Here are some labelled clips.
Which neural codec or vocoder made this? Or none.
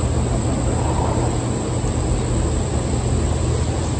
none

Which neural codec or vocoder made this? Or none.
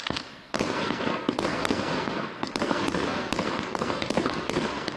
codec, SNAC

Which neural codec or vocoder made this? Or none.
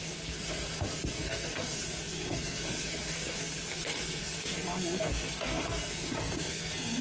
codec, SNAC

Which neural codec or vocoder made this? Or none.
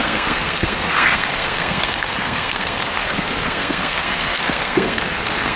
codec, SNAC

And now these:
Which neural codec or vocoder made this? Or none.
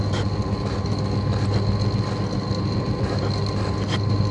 none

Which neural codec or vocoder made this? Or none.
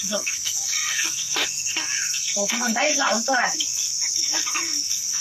codec, SNAC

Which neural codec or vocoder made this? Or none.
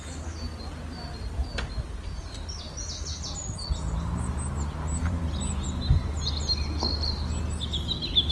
none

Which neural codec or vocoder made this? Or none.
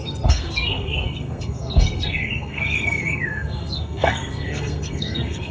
codec, SNAC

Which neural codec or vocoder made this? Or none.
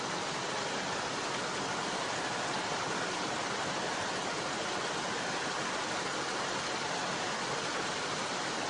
none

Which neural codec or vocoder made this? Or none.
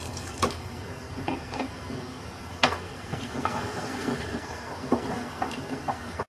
codec, SNAC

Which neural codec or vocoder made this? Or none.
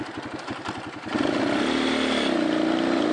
none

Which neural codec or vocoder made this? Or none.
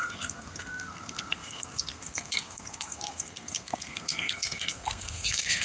codec, SNAC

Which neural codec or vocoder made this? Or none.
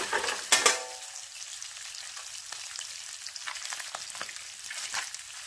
none